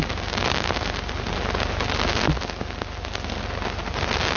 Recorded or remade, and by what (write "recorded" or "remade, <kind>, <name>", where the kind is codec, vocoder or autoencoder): recorded